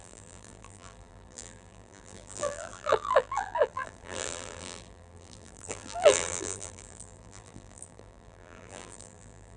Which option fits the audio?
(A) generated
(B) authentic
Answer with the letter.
A